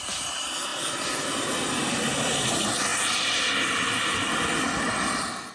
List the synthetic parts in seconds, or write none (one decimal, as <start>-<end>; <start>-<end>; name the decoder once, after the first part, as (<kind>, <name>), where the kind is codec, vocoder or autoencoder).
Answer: none